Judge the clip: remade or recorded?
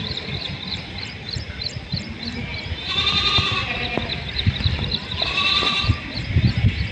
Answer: remade